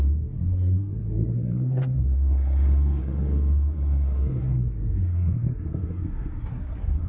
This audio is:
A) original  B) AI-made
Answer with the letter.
B